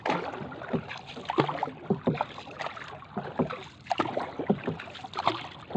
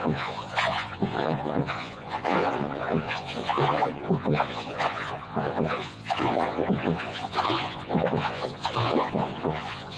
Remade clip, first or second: second